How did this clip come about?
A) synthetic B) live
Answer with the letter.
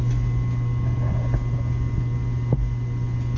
B